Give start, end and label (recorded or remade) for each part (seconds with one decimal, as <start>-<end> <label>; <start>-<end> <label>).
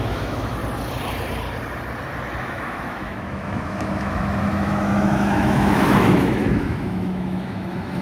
0.0-0.6 remade; 0.6-2.4 recorded; 2.4-8.0 remade